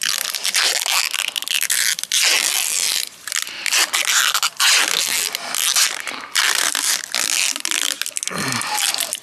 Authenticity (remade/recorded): recorded